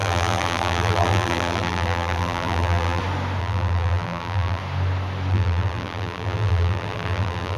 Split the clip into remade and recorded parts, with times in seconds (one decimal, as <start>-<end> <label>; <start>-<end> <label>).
0.0-3.0 remade; 3.0-3.4 recorded; 3.4-4.6 remade; 4.6-5.3 recorded; 5.3-7.6 remade